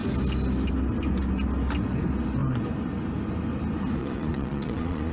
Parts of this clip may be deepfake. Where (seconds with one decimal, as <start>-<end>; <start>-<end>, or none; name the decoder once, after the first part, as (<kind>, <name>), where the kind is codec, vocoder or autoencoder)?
4.0-5.1 (vocoder, Vocos)